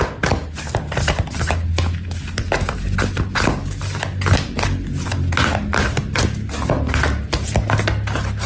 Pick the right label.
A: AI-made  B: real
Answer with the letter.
B